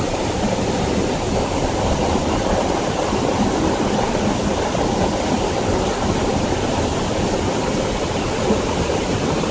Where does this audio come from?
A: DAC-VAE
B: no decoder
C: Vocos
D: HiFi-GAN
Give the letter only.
B